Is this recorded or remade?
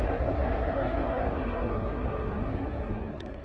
remade